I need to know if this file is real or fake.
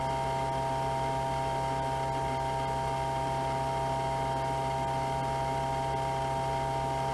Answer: real